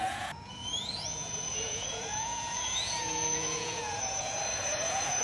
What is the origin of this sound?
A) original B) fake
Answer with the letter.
B